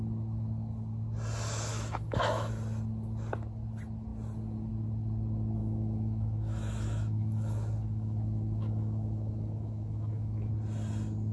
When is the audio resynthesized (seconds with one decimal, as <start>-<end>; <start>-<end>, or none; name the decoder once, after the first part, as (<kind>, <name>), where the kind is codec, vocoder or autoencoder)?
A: 1.7-2.5 (autoencoder, DAC-VAE); 5.6-10.5

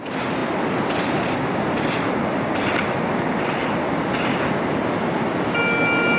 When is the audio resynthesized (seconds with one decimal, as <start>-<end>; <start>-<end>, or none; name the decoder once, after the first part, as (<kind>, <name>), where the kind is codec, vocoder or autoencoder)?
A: none